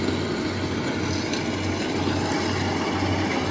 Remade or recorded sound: recorded